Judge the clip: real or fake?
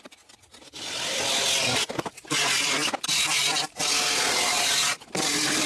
real